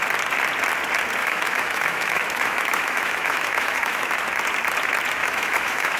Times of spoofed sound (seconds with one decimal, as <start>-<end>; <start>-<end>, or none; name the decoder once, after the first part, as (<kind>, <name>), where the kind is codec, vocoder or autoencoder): 1.2-4.1 (autoencoder, DAC-VAE); 5.2-6.0